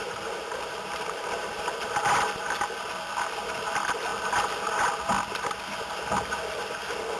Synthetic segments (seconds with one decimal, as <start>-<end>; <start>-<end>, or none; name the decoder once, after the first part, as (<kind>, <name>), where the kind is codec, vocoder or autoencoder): 0.0-1.5 (vocoder, BigVGAN v2)